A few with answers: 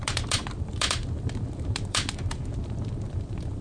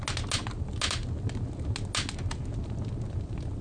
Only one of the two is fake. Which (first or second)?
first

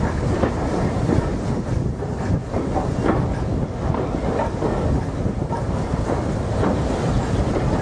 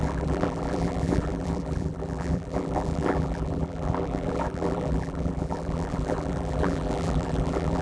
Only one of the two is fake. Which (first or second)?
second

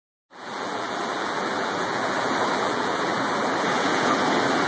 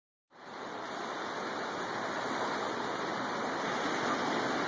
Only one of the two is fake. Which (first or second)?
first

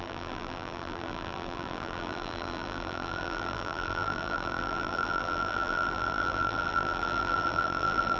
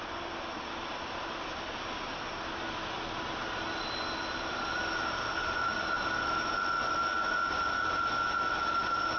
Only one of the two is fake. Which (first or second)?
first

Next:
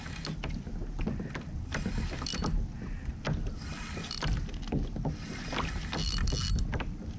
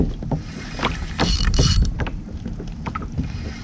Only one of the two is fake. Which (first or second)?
second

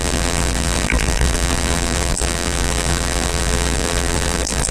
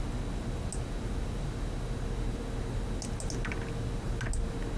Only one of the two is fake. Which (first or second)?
first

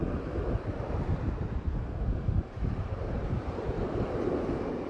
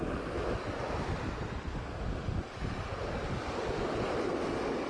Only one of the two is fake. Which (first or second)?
first